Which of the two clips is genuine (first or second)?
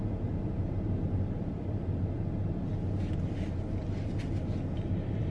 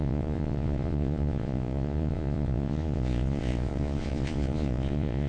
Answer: first